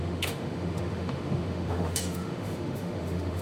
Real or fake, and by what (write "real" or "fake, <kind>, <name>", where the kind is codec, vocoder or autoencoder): fake, autoencoder, DAC-VAE